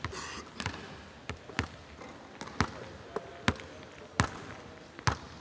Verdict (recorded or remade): recorded